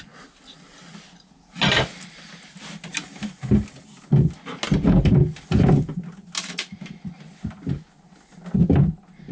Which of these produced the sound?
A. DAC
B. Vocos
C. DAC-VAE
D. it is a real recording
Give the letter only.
D